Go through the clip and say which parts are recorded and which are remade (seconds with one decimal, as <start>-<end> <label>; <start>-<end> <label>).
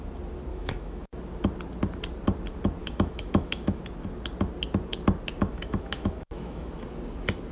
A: 0.0-0.5 recorded; 0.5-1.1 remade; 1.1-2.8 recorded; 2.8-3.8 remade; 3.8-5.5 recorded; 5.5-6.7 remade; 6.7-7.5 recorded